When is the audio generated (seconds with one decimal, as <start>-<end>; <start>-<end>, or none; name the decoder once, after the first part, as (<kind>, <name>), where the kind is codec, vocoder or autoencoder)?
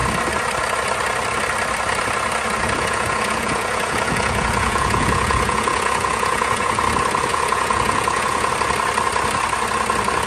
2.6-6.8 (vocoder, Vocos); 7.3-8.5